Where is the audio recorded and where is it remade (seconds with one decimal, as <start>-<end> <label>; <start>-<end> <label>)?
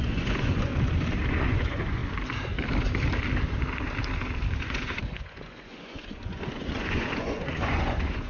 0.0-0.7 remade; 0.7-1.3 recorded; 1.3-2.0 remade; 2.0-4.6 recorded; 4.6-8.3 remade